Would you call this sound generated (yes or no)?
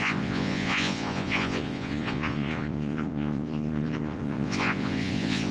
yes